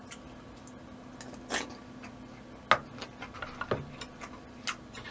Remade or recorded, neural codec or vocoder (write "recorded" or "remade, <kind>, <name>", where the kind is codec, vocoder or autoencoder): recorded